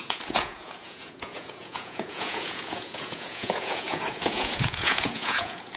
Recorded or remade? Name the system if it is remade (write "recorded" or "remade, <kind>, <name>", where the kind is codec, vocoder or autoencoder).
remade, vocoder, Vocos